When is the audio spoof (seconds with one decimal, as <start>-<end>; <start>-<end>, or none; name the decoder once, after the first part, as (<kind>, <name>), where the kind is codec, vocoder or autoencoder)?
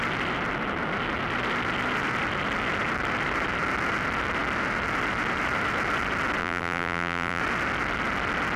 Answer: 6.4-7.4 (vocoder, BigVGAN v2)